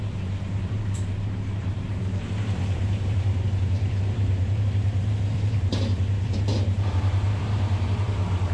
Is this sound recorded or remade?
remade